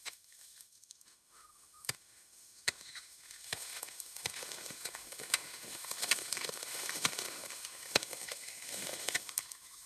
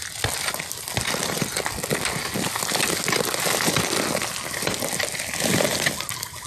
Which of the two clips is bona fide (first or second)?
second